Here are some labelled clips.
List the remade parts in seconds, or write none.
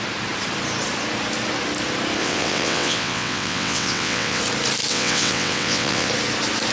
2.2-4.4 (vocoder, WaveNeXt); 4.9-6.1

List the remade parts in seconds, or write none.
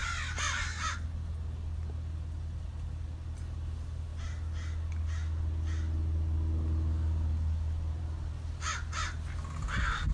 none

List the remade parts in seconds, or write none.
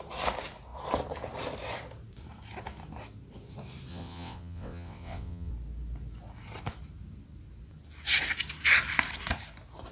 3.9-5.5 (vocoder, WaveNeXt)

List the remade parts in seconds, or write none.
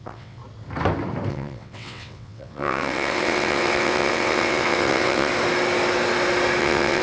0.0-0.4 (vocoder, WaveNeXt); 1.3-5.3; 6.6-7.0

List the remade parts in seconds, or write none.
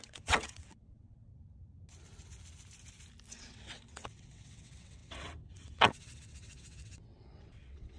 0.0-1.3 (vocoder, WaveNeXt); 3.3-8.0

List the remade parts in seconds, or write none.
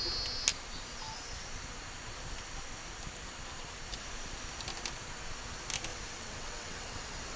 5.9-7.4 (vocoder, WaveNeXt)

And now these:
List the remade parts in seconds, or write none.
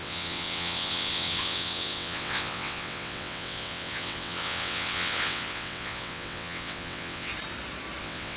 0.0-7.3 (vocoder, WaveNeXt); 8.0-8.4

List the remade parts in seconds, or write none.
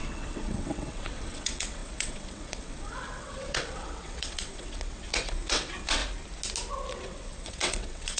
0.0-6.0 (vocoder, WaveNeXt); 6.9-8.2